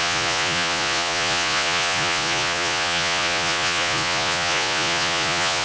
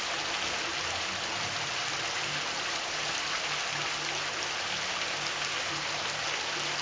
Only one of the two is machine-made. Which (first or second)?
first